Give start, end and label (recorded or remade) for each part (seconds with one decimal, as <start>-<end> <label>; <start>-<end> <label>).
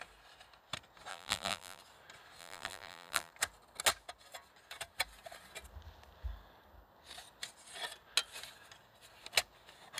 0.0-1.1 recorded; 1.1-1.8 remade; 1.8-2.4 recorded; 2.4-3.3 remade; 3.3-10.0 recorded